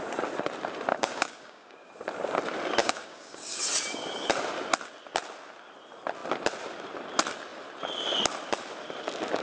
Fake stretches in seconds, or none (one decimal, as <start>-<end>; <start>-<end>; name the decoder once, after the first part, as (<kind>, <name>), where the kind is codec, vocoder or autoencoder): 0.9-1.9 (codec, DAC); 2.8-3.6